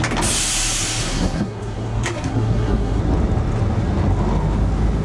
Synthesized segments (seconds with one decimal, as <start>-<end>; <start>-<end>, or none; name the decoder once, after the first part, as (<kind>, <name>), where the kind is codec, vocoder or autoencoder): 1.0-3.0 (codec, SNAC)